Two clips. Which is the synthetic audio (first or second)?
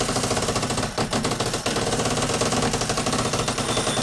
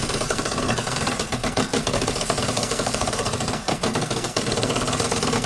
second